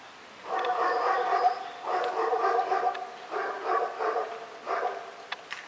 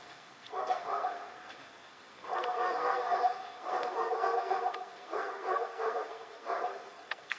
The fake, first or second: second